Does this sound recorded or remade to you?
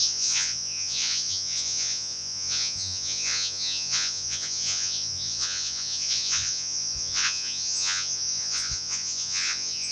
remade